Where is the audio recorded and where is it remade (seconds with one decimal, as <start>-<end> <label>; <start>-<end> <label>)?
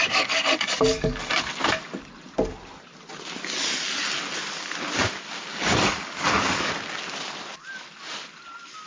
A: 0.0-1.2 remade; 1.2-5.5 recorded; 5.5-6.7 remade; 6.7-8.9 recorded